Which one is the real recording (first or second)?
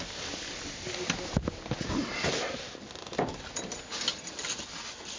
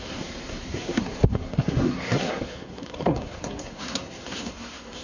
first